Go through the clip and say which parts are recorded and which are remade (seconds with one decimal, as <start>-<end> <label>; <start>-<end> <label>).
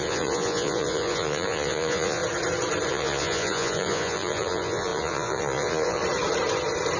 0.0-2.2 remade; 2.2-2.9 recorded; 2.9-6.0 remade; 6.0-7.0 recorded